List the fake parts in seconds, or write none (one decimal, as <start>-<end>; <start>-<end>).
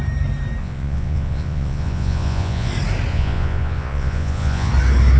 0.6-2.7; 3.1-4.7